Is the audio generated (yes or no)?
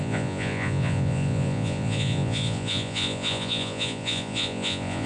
yes